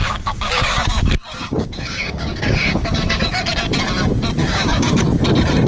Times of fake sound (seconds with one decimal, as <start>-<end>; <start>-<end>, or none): 0.0-3.4; 4.4-5.0